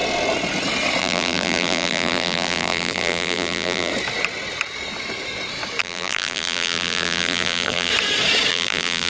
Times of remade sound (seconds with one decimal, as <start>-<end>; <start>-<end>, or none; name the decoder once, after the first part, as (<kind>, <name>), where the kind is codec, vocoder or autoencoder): 1.0-3.9 (vocoder, BigVGAN v2); 5.8-7.9; 8.5-9.1